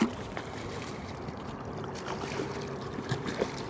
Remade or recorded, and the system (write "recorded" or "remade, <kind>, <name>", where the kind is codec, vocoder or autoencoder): remade, vocoder, BigVGAN v2